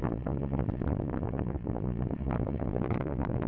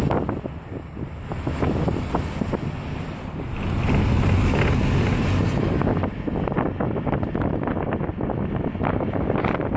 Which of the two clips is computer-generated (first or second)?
first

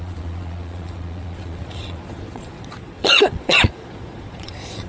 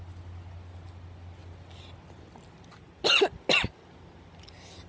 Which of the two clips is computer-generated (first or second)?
first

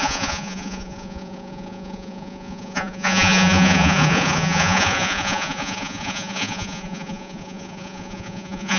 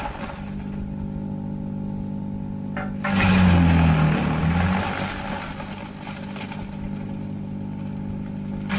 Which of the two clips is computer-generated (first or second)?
first